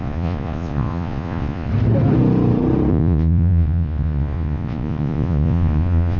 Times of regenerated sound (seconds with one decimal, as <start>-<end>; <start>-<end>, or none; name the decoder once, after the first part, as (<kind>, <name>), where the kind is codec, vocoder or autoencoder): 0.0-1.7 (vocoder, Vocos); 2.9-6.2